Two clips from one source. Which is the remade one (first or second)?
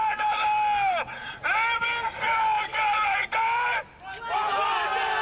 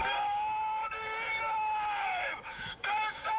second